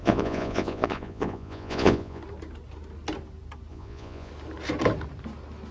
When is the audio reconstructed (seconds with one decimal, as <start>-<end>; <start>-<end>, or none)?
0.0-2.2; 3.7-4.3